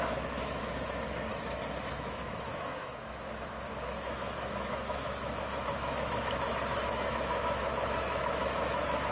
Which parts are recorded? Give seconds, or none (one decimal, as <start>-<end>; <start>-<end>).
none